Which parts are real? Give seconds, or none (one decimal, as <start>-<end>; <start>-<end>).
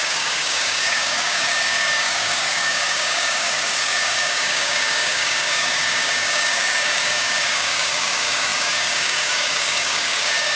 none